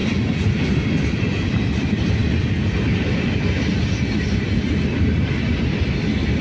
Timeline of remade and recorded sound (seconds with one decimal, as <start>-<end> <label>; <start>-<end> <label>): 0.0-6.4 recorded